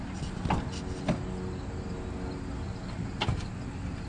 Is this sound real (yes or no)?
yes